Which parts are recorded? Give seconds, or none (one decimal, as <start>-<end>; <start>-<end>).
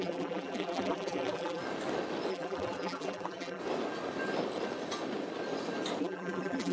1.6-2.3; 3.6-6.0